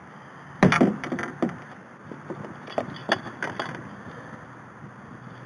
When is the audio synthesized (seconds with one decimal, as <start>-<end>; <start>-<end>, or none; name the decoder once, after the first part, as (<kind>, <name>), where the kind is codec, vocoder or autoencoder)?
none